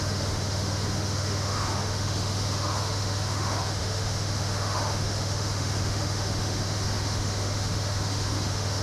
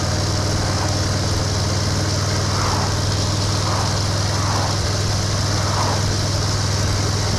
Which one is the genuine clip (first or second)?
second